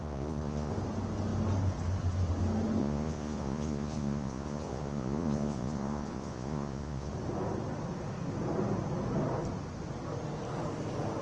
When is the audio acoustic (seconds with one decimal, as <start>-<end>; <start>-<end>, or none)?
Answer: 0.7-2.8; 7.1-11.2